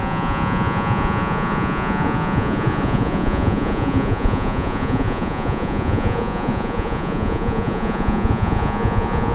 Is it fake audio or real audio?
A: fake